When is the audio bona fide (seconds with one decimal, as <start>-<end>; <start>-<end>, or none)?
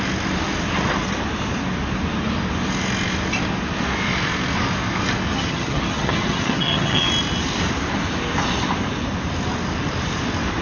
0.0-5.3; 7.1-10.6